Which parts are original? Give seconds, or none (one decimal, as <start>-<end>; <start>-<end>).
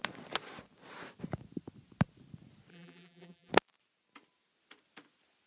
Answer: 0.0-2.7; 3.5-5.5